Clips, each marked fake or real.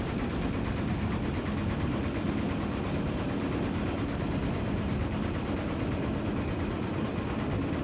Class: real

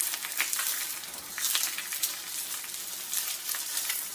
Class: real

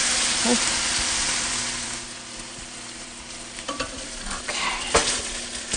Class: fake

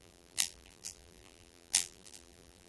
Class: fake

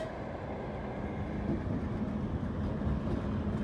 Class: real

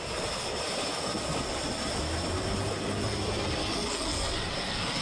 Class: real